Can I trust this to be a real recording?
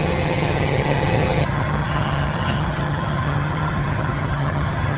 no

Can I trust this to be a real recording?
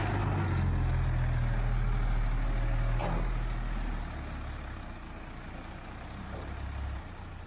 yes